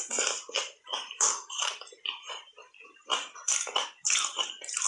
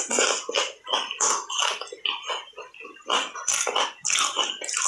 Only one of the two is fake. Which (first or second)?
first